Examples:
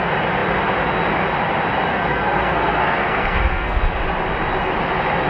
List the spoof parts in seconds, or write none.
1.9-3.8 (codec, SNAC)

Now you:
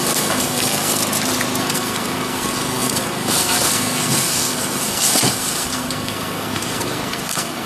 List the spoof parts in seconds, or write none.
0.0-1.0 (codec, SNAC); 1.6-7.7

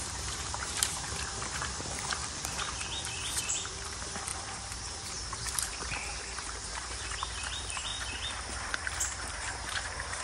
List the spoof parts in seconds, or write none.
0.0-2.2 (vocoder, BigVGAN v2); 3.3-10.2

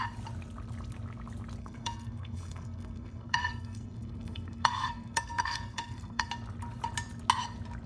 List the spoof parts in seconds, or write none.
1.6-6.3 (codec, SNAC)

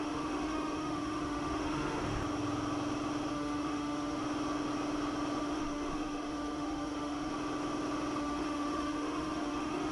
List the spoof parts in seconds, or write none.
0.0-2.0 (autoencoder, DAC-VAE); 3.3-4.2; 5.4-7.3; 8.2-9.9

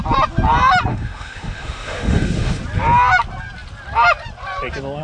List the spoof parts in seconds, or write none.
0.9-2.6 (autoencoder, DAC-VAE)

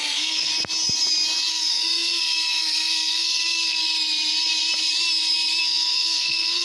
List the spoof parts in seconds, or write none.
0.0-0.5 (codec, SNAC); 1.5-3.8; 5.6-6.6